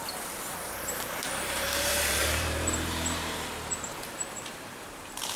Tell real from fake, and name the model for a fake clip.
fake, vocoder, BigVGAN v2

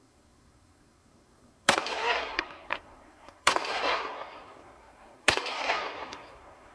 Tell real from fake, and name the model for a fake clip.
fake, codec, SNAC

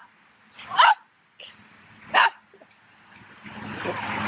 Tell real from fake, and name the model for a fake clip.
real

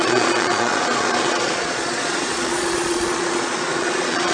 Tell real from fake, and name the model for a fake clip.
fake, vocoder, Vocos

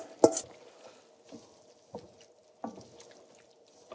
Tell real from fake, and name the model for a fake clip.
real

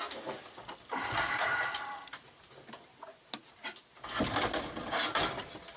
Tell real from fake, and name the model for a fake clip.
real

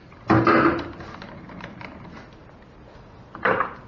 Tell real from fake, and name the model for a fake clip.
real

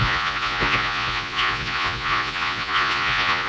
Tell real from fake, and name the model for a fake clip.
fake, vocoder, Vocos